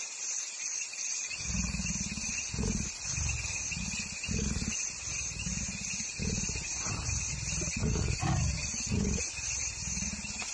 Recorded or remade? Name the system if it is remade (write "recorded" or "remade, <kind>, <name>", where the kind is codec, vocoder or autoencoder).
recorded